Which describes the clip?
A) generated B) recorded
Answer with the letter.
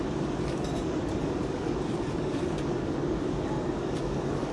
A